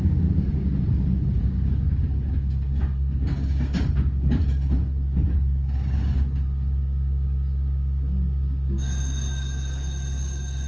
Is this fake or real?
fake